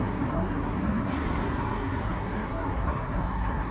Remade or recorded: remade